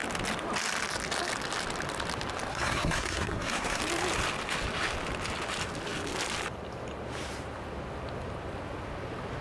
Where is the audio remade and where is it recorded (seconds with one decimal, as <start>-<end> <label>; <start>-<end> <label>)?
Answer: 0.0-2.5 recorded; 2.5-3.8 remade; 3.8-9.4 recorded

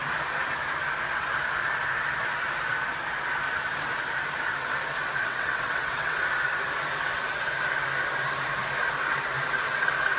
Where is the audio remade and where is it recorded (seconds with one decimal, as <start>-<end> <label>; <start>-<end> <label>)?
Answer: 0.0-5.2 recorded; 5.2-6.2 remade; 6.2-10.2 recorded

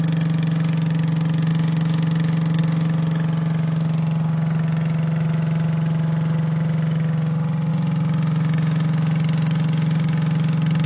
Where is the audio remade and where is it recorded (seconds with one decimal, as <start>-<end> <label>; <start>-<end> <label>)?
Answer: 0.0-10.9 recorded

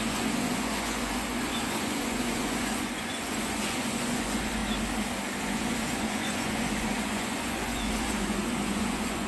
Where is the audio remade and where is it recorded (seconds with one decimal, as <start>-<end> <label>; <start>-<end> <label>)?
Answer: 0.0-4.6 remade; 4.6-5.4 recorded; 5.4-9.3 remade

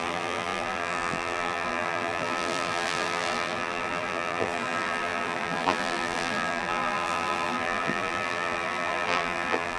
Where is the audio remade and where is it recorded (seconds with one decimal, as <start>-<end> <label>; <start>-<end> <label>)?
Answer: 0.0-9.8 remade